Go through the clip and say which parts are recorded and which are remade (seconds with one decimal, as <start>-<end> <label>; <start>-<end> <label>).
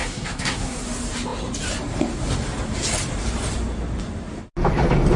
0.0-0.8 remade; 0.8-5.2 recorded